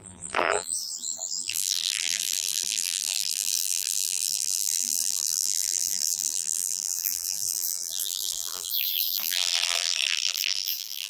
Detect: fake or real fake